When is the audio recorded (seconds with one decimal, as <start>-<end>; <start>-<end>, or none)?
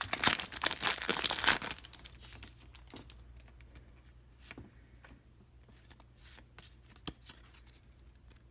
0.0-8.5